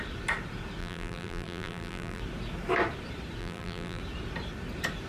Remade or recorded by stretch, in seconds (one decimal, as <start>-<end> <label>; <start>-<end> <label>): 0.0-0.8 recorded; 0.8-2.2 remade; 2.2-3.4 recorded; 3.4-4.0 remade; 4.0-5.1 recorded